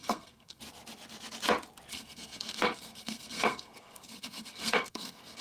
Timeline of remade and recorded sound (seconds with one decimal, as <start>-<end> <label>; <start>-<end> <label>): 0.0-0.6 remade; 0.6-1.9 recorded; 1.9-5.4 remade